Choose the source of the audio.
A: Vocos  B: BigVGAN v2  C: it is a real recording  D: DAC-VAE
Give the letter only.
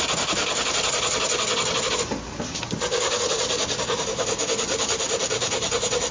C